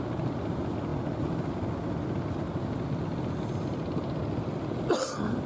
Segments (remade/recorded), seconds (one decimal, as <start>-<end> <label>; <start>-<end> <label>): 0.0-5.5 recorded